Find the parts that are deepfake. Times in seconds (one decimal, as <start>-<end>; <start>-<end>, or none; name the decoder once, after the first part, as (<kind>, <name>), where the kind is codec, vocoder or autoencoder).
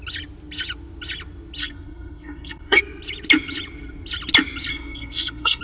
1.6-2.8 (codec, SNAC); 4.7-5.6